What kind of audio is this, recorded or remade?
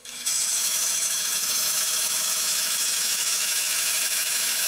remade